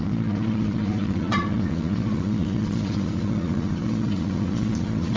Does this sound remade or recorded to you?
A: remade